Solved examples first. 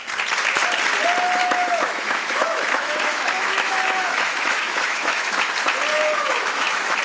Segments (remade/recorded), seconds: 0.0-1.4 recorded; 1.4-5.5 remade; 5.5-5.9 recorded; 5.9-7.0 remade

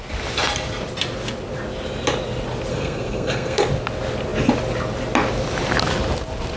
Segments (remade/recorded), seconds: 0.0-2.7 recorded; 2.7-3.6 remade; 3.6-6.6 recorded

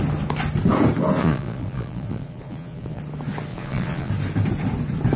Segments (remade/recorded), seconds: 0.0-1.2 recorded; 1.2-3.0 remade; 3.0-3.5 recorded; 3.5-4.1 remade; 4.1-5.2 recorded